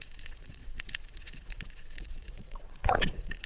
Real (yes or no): no